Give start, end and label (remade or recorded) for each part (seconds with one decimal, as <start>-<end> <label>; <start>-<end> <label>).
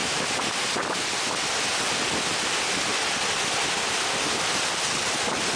0.0-5.6 recorded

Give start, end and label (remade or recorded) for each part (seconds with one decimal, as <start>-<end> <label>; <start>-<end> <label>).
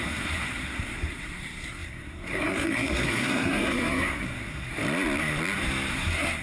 0.0-4.8 remade; 4.8-5.9 recorded; 5.9-6.4 remade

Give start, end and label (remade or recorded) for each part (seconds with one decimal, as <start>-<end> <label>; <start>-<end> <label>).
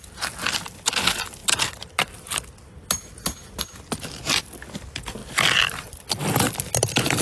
0.0-7.2 recorded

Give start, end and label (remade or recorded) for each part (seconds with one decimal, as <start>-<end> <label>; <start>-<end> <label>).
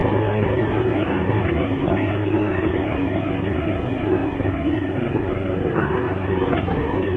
0.0-7.2 remade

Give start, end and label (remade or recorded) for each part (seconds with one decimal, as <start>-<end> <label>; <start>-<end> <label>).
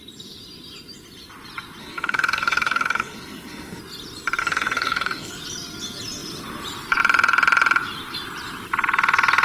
0.0-1.8 recorded; 1.8-3.8 remade; 3.8-4.4 recorded; 4.4-5.3 remade; 5.3-9.4 recorded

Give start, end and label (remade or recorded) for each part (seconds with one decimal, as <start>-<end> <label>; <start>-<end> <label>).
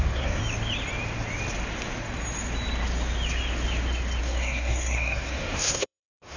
0.0-0.4 remade; 0.4-4.2 recorded; 4.2-6.4 remade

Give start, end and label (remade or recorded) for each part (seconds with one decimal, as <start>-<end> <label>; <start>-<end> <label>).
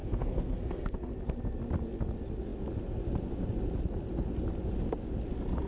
0.0-1.1 remade; 1.1-5.7 recorded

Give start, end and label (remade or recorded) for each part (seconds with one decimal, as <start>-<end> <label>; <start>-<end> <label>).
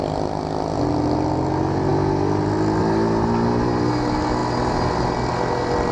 0.0-5.9 recorded